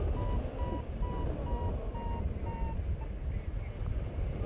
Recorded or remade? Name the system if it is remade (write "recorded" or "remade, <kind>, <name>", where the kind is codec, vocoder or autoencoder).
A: recorded